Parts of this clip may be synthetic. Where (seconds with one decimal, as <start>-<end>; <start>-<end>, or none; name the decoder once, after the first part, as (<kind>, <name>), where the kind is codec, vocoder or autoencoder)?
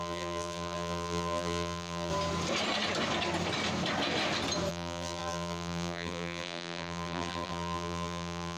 0.0-2.1 (vocoder, BigVGAN v2); 4.7-8.6